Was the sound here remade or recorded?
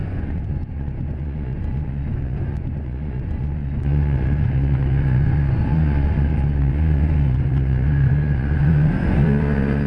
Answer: remade